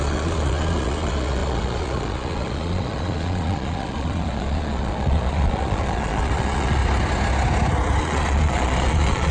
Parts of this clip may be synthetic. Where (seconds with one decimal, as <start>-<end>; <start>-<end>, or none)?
0.0-6.8; 8.0-9.3

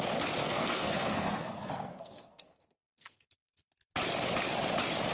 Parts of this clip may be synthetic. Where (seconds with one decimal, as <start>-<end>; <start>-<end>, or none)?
0.4-3.5